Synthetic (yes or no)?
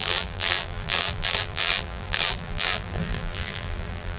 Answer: yes